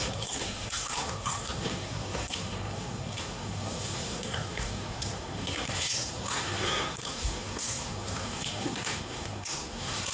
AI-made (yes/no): yes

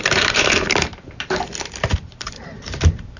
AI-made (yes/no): yes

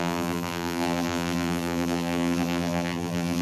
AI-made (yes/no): yes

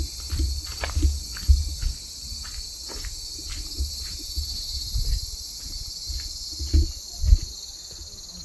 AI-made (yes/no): no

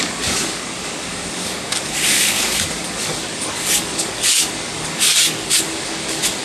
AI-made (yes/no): yes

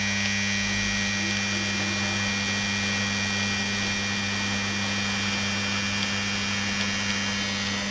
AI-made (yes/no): no